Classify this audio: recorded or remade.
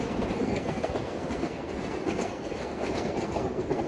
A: remade